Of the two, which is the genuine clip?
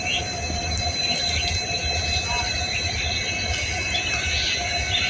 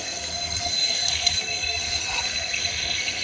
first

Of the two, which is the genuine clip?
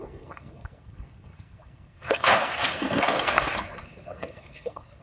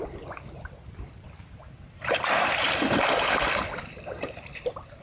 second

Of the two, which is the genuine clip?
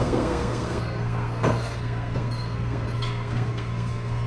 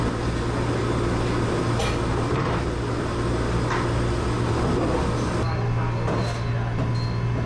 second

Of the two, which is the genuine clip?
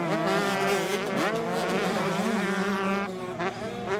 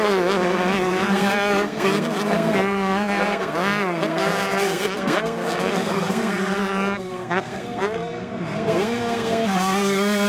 first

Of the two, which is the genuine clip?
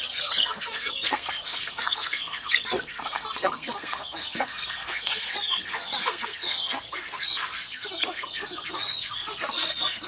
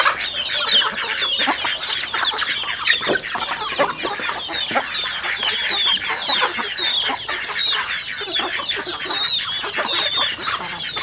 second